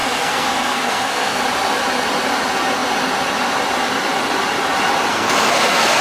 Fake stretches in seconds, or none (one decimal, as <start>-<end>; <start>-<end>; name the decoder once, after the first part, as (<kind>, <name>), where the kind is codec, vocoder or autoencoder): 0.0-1.4 (codec, SNAC); 5.1-6.0